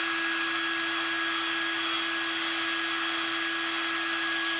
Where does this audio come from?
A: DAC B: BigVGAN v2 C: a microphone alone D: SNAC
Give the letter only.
C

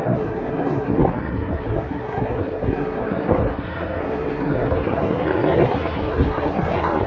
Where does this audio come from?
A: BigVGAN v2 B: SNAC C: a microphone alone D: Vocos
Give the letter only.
B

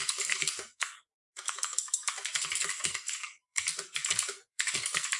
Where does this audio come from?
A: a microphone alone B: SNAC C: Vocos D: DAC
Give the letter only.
B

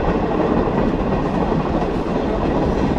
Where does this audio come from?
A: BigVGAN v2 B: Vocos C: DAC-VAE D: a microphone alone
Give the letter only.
D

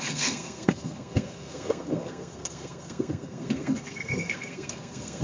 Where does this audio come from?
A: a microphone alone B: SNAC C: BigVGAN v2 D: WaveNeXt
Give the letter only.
B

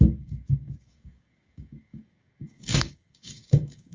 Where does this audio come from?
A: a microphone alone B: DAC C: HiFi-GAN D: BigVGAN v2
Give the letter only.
B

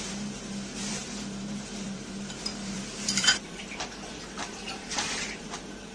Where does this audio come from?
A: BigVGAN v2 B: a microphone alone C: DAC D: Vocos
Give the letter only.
A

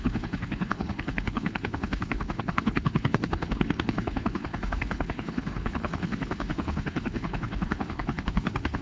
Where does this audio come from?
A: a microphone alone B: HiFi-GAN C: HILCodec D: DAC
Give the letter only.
C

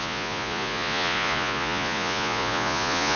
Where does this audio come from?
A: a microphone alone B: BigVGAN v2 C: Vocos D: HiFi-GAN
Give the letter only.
C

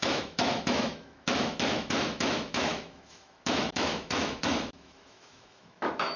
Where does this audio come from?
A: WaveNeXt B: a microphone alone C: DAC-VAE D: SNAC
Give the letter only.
C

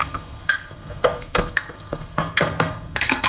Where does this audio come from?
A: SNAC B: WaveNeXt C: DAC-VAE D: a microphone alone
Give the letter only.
A